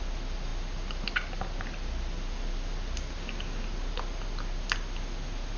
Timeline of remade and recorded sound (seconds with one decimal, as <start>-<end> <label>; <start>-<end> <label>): 0.0-5.6 recorded